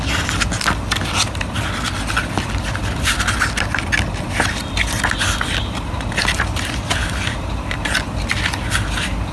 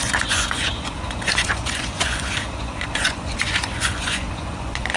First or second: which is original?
first